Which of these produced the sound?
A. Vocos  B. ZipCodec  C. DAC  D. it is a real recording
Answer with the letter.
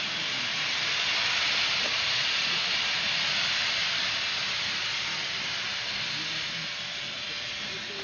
D